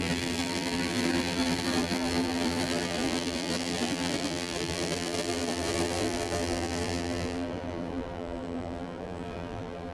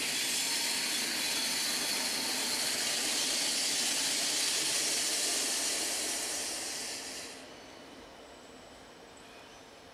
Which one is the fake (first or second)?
first